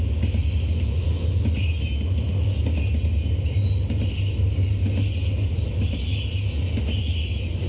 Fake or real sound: real